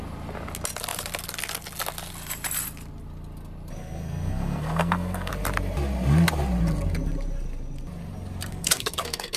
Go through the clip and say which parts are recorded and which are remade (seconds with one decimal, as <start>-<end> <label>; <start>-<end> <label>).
0.0-3.8 recorded; 3.8-5.3 remade; 5.3-8.5 recorded; 8.5-9.4 remade